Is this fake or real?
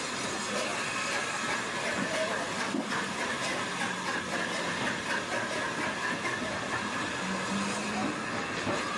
real